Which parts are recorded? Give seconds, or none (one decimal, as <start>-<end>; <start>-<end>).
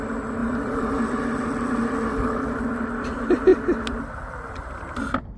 0.0-0.4; 1.4-5.4